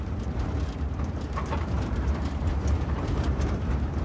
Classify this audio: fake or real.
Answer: fake